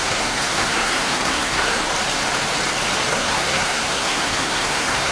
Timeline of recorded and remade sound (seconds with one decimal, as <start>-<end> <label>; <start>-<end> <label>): 0.0-1.8 remade; 1.8-3.1 recorded; 3.1-5.1 remade